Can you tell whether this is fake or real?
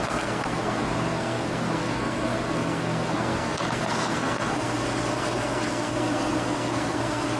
fake